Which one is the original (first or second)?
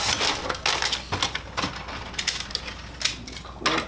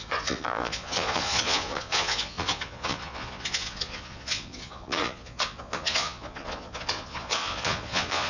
first